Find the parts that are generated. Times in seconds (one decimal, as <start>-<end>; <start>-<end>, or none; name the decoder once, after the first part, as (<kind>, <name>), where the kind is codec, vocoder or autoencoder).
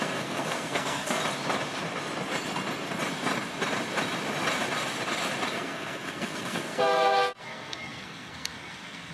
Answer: 0.0-1.2 (codec, SNAC); 5.5-9.1